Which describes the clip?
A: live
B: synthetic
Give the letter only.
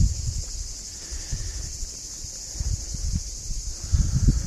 A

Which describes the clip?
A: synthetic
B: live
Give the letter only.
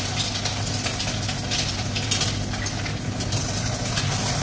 B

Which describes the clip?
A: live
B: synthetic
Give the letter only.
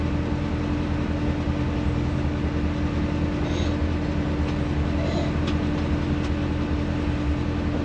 A